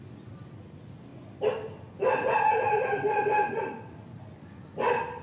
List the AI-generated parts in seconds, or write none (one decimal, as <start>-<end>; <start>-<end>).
none